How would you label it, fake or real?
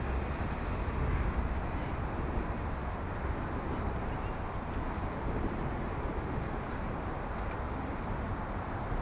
real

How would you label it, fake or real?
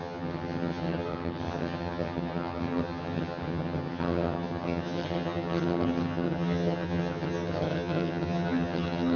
fake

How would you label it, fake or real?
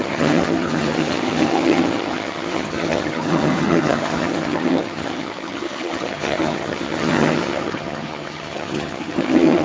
fake